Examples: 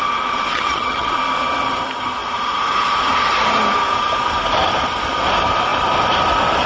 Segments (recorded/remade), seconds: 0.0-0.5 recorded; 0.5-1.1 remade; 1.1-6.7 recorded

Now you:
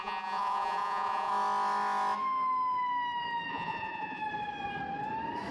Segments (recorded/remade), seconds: 0.0-1.3 remade; 1.3-3.5 recorded; 3.5-4.2 remade; 4.2-5.5 recorded

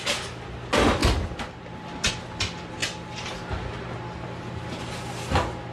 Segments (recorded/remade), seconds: 0.0-5.7 recorded